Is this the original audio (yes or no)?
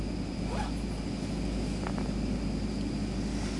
yes